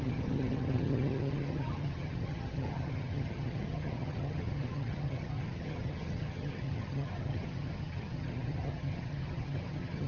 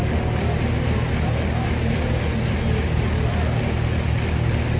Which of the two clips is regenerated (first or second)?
first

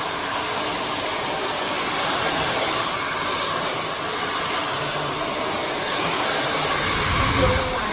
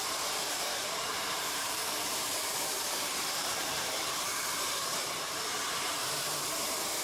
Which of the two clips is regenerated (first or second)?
second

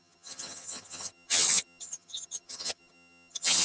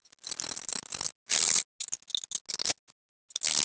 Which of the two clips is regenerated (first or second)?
first